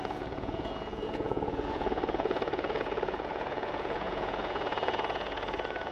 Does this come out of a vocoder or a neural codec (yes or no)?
yes